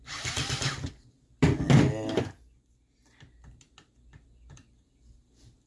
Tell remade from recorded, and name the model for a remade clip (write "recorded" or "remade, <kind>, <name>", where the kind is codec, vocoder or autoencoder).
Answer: recorded